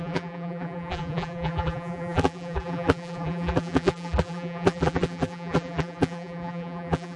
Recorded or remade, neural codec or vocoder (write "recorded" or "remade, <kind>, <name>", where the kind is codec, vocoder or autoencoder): remade, vocoder, BigVGAN v2